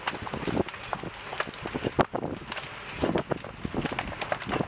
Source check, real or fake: real